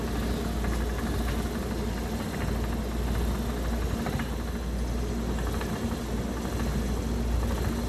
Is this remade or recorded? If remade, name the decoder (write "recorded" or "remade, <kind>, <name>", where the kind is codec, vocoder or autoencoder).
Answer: recorded